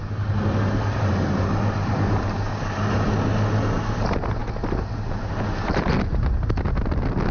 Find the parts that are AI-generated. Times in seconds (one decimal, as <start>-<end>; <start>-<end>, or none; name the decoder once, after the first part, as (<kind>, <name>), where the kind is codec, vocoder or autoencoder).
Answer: none

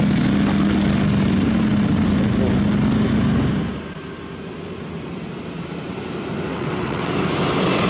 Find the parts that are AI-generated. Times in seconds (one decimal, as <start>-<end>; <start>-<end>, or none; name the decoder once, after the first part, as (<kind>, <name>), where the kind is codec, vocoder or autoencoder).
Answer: 6.5-7.1 (vocoder, WaveNeXt)

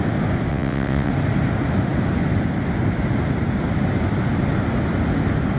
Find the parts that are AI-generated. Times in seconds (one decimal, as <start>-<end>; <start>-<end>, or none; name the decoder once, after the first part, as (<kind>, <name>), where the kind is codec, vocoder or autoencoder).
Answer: 0.5-1.1 (vocoder, WaveNeXt)

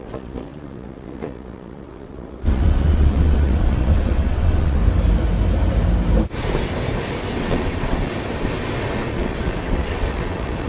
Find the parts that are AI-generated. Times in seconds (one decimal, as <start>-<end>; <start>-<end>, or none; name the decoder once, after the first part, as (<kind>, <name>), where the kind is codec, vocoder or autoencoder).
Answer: 0.0-4.8 (vocoder, WaveNeXt); 7.4-8.1; 9.1-10.7

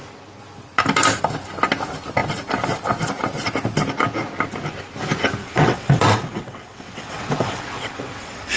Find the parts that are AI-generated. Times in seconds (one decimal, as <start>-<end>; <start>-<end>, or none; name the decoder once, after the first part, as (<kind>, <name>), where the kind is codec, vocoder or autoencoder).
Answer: 5.4-8.6 (vocoder, WaveNeXt)

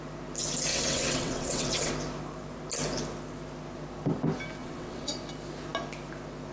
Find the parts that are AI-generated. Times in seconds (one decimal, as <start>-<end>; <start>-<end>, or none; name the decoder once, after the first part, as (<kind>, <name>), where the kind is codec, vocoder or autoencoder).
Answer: 0.7-1.9 (vocoder, WaveNeXt); 4.6-5.1

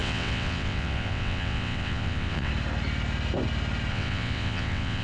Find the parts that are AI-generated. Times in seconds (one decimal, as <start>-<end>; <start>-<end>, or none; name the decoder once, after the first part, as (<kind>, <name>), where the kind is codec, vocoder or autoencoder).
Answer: 0.0-2.5 (vocoder, WaveNeXt); 3.9-5.0